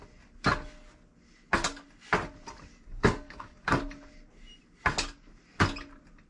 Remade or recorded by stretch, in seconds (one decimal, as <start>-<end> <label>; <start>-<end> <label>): 0.0-2.7 recorded; 2.7-3.8 remade; 3.8-6.3 recorded